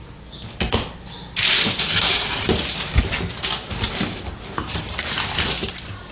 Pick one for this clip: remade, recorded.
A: recorded